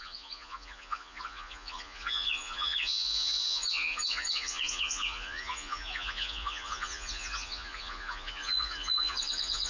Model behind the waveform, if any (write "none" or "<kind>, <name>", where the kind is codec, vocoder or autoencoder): vocoder, Vocos